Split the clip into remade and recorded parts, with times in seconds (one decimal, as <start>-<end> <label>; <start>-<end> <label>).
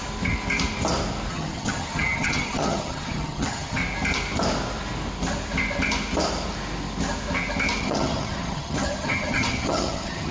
0.0-1.3 recorded; 1.3-3.8 remade; 3.8-7.8 recorded; 7.8-10.3 remade